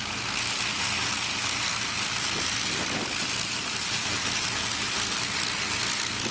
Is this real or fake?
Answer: real